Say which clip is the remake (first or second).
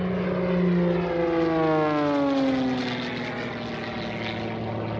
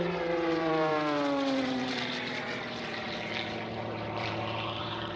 second